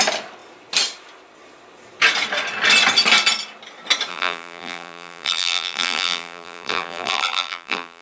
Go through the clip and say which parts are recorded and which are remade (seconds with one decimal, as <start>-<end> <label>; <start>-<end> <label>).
0.0-4.1 recorded; 4.1-8.0 remade